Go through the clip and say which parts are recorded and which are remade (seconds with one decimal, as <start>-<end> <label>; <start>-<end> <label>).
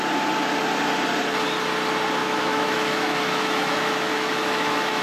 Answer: 0.0-2.2 recorded; 2.2-5.0 remade